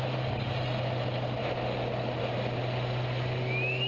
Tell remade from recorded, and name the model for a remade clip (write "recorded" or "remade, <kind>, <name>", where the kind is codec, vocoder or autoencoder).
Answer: recorded